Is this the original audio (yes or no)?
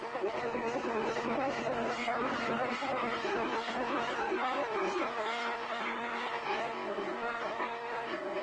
no